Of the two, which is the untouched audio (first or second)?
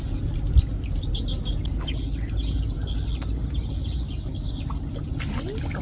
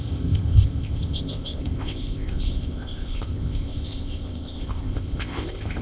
first